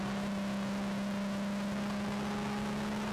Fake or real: real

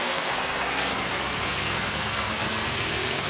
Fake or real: fake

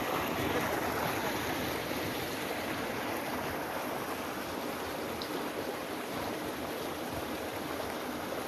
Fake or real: real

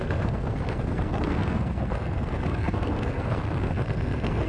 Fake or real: fake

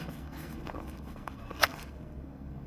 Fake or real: fake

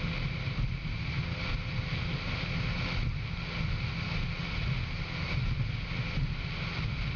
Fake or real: real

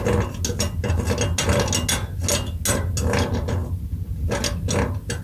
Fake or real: real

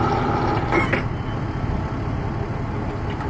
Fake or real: real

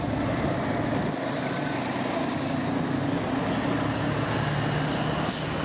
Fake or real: real